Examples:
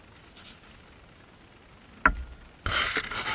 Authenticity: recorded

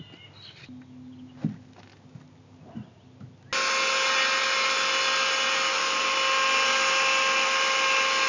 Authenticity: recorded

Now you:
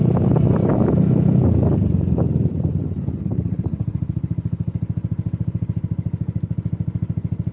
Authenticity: recorded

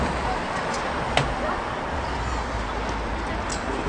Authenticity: recorded